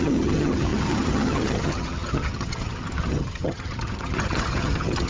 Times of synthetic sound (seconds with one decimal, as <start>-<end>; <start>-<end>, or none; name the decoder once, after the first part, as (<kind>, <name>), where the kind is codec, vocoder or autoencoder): 0.0-5.1 (vocoder, HiFi-GAN)